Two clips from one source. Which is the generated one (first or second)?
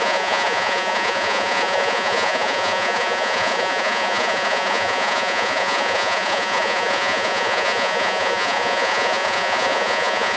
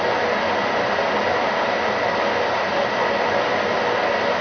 first